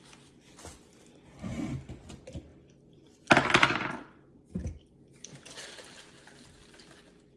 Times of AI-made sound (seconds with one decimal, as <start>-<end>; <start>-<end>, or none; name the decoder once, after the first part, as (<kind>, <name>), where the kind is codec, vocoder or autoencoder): 2.5-3.9 (vocoder, BigVGAN v2)